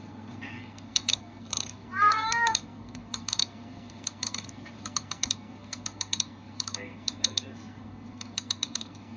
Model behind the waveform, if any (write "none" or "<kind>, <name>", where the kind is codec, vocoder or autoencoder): codec, SNAC